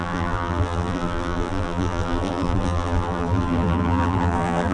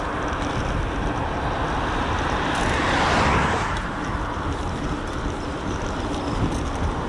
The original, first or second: second